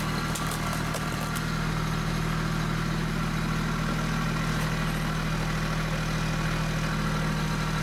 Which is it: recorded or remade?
recorded